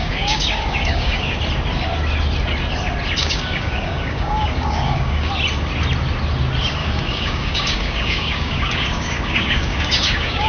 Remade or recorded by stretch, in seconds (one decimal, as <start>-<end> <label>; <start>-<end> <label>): 0.0-1.4 remade; 1.4-3.2 recorded; 3.2-5.3 remade; 5.3-6.8 recorded; 6.8-10.5 remade